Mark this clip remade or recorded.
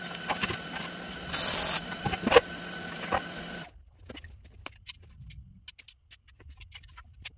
recorded